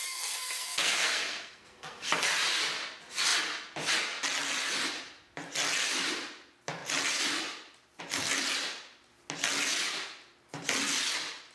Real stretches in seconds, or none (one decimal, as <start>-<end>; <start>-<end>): 2.2-11.5